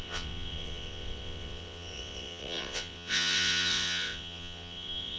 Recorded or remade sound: remade